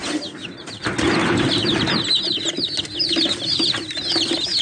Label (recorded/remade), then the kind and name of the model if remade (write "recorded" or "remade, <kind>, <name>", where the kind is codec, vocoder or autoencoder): recorded